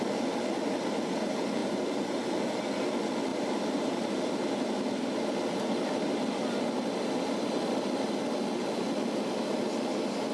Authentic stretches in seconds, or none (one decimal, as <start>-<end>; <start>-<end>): 0.0-1.6; 2.6-3.3; 4.3-10.3